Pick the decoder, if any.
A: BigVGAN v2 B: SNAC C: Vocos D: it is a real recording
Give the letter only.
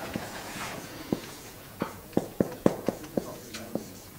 C